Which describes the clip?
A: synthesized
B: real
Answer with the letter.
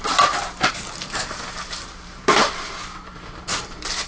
A